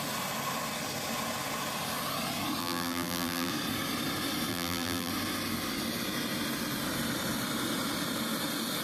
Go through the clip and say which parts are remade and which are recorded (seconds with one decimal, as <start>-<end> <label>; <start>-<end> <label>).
0.0-2.6 recorded; 2.6-3.5 remade; 3.5-4.5 recorded; 4.5-5.1 remade; 5.1-8.8 recorded